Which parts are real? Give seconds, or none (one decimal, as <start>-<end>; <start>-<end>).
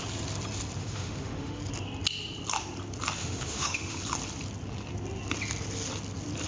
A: 0.0-0.8; 1.6-3.2; 4.0-6.5